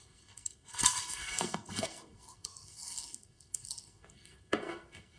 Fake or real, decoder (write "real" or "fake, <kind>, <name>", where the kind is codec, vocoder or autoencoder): fake, codec, SNAC